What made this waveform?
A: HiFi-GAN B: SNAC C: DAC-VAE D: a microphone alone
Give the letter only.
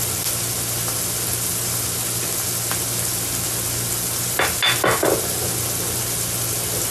D